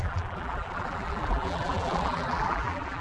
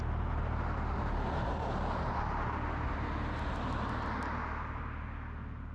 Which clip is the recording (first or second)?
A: second